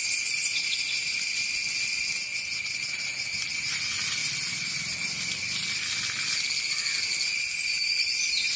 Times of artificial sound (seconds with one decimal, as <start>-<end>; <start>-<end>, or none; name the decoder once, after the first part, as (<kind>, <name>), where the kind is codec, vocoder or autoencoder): none